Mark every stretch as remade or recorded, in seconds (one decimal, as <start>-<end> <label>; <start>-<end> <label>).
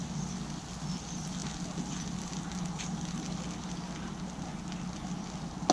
0.0-5.7 recorded